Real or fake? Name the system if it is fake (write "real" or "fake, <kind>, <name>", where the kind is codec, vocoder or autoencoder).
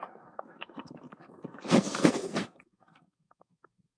fake, codec, SNAC